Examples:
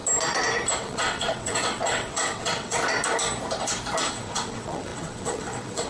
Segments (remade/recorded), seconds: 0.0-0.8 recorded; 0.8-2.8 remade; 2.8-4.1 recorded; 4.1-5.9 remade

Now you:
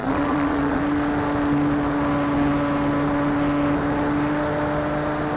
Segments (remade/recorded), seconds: 0.0-0.8 remade; 0.8-5.4 recorded

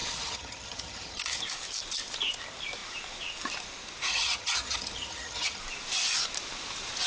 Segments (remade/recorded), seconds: 0.0-1.4 remade; 1.4-4.1 recorded; 4.1-5.6 remade; 5.6-7.1 recorded

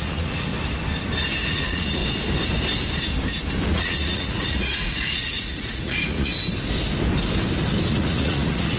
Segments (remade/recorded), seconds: 0.0-0.5 remade; 0.5-1.5 recorded; 1.5-2.0 remade; 2.0-3.7 recorded; 3.7-6.3 remade; 6.3-7.9 recorded; 7.9-8.8 remade

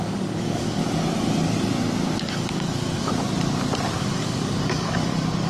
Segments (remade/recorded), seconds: 0.0-0.8 remade; 0.8-2.2 recorded; 2.2-3.1 remade; 3.1-4.0 recorded; 4.0-5.5 remade

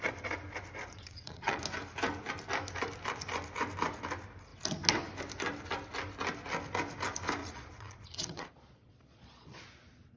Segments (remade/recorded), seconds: 0.0-0.9 recorded; 0.9-1.6 remade; 1.6-7.4 recorded; 7.4-9.6 remade; 9.6-10.2 recorded